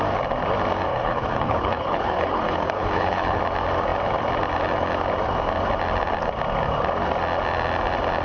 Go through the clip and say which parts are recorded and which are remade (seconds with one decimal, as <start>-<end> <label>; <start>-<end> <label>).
0.0-0.9 recorded; 0.9-3.4 remade; 3.4-8.2 recorded